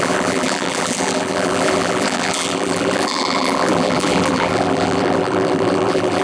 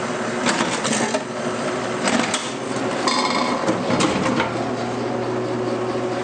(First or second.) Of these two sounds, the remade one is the first